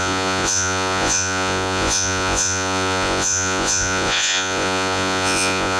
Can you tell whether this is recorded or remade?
remade